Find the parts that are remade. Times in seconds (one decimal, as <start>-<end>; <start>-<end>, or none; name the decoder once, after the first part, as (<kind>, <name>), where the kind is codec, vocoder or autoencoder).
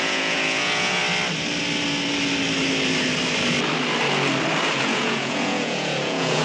0.0-1.0 (vocoder, Vocos); 4.8-6.4